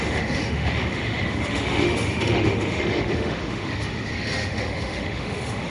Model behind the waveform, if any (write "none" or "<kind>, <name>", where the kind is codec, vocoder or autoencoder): autoencoder, DAC-VAE